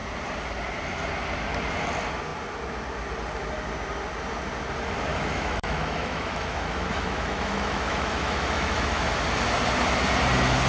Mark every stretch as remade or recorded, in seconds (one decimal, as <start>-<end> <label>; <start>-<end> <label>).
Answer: 0.0-5.1 recorded; 5.1-9.0 remade; 9.0-10.7 recorded